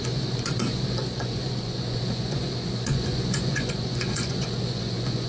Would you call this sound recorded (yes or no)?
no